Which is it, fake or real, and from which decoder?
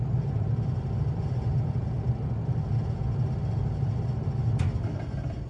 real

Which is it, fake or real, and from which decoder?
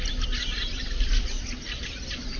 real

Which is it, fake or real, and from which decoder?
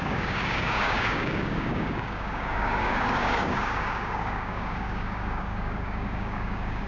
fake, codec, DAC